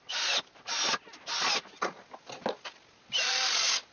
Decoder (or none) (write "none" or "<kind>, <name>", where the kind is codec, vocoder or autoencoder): none